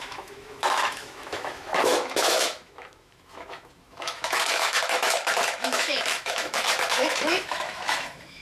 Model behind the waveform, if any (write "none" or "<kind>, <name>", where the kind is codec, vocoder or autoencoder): autoencoder, DAC-VAE